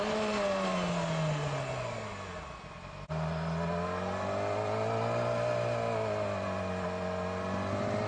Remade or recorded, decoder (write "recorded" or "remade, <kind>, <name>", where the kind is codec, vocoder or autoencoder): recorded